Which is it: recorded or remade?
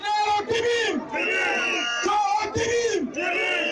recorded